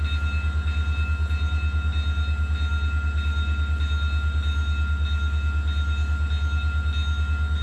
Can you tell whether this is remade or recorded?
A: recorded